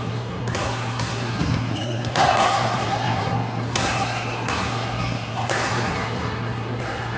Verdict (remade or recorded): remade